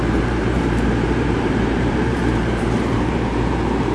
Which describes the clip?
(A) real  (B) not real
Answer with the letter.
B